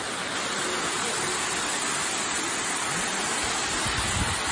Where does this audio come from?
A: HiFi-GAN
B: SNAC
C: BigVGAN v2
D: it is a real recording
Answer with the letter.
D